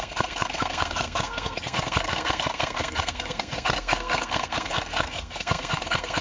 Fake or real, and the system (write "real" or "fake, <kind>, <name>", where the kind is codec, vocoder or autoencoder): fake, codec, SNAC